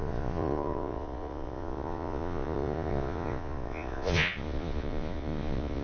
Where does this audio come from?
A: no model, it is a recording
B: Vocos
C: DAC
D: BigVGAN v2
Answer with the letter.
B